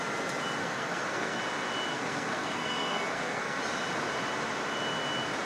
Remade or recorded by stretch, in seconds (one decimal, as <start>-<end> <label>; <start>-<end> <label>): 0.0-0.6 recorded; 0.6-1.4 remade; 1.4-1.9 recorded; 1.9-3.6 remade; 3.6-5.4 recorded